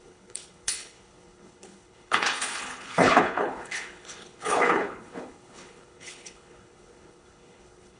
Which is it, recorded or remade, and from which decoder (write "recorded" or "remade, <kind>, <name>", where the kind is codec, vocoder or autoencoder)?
remade, codec, HILCodec